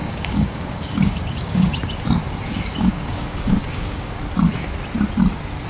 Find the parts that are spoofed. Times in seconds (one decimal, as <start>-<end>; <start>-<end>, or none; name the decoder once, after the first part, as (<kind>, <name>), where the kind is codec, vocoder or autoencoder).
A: 0.0-1.8 (codec, DAC); 2.7-4.2